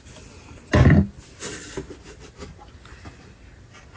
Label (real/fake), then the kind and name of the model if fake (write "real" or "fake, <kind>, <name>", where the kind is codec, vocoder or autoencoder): real